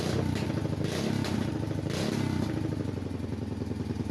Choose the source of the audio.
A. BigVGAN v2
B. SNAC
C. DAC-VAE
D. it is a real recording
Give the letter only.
D